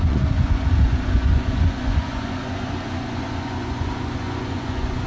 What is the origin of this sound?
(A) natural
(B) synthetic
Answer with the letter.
B